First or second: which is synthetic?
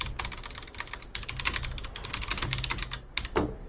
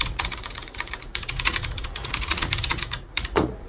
second